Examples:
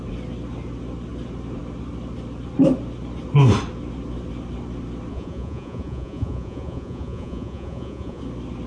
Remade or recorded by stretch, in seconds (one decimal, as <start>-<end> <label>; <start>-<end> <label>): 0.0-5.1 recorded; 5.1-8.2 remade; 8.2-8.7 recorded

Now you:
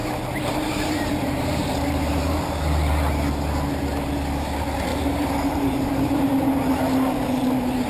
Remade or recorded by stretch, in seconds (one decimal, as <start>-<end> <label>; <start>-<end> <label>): 0.0-2.4 remade; 2.4-4.9 recorded; 4.9-6.2 remade; 6.2-7.9 recorded

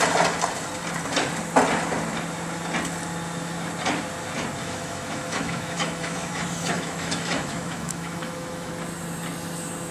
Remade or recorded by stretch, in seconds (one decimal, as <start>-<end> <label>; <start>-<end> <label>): 0.0-4.6 recorded; 4.6-8.7 remade; 8.7-9.9 recorded

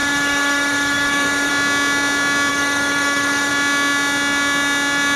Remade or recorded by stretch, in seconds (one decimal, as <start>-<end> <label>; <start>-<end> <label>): 0.0-1.5 remade; 1.5-2.5 recorded; 2.5-3.5 remade; 3.5-5.2 recorded